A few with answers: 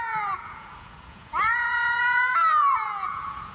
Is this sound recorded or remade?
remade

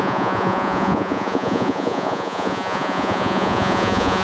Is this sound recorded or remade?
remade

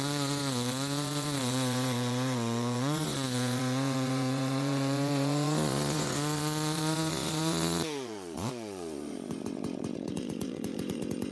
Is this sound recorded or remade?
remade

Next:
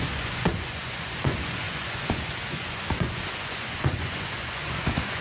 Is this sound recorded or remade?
remade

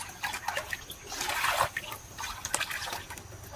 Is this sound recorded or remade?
recorded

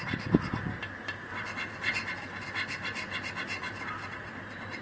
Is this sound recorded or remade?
recorded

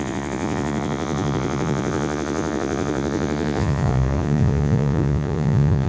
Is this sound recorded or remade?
remade